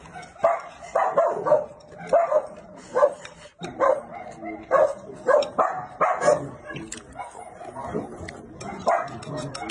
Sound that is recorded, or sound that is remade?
recorded